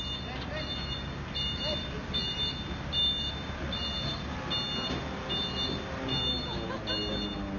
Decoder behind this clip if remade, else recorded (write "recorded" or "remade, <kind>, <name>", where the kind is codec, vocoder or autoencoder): recorded